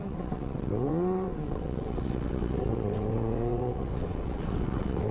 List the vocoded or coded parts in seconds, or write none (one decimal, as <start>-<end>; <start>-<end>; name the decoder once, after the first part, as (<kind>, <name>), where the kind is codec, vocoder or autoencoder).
0.0-5.1 (vocoder, WaveNeXt)